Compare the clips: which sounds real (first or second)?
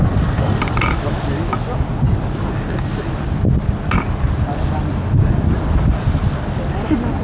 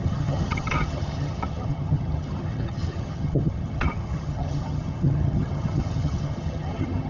first